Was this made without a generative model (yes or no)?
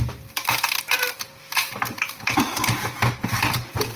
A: yes